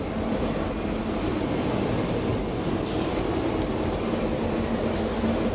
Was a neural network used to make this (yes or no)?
no